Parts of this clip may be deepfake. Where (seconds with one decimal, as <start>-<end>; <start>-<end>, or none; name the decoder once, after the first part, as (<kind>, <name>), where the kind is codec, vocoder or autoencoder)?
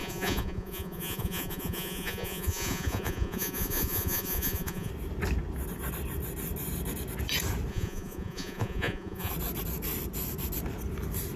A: 0.0-4.9 (vocoder, Vocos); 7.7-9.3